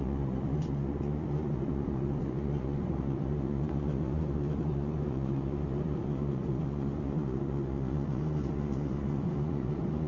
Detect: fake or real fake